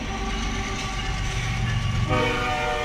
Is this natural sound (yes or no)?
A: yes